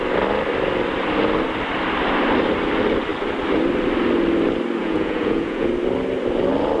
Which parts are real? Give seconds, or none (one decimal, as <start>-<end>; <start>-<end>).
0.0-4.8; 5.7-6.8